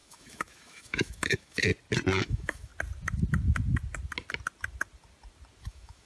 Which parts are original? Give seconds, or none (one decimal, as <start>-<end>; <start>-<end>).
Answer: 1.7-2.2; 2.7-5.6